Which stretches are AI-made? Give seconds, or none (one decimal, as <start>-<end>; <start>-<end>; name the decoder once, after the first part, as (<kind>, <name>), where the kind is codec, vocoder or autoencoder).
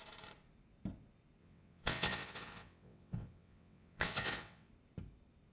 1.4-4.7 (vocoder, WaveNeXt)